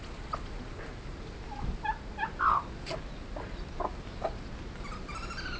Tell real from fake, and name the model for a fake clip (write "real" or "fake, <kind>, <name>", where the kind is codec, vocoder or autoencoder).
real